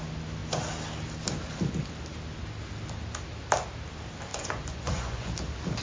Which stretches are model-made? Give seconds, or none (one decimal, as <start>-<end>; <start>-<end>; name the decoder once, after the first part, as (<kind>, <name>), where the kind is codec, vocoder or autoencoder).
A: 4.3-5.3 (vocoder, Vocos)